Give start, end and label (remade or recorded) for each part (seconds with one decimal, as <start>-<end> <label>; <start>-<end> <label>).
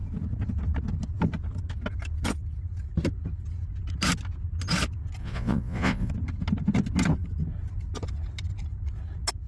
0.0-5.2 recorded; 5.2-6.1 remade; 6.1-9.5 recorded